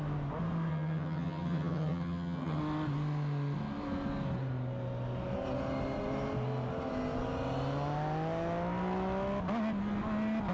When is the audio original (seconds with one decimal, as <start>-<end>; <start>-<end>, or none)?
0.0-0.7; 2.6-10.5